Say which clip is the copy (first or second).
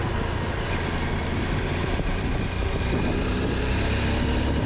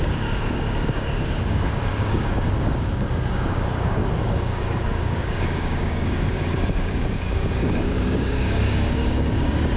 second